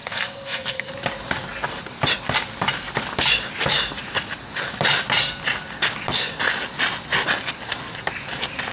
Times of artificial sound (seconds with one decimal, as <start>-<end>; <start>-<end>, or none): 0.0-0.9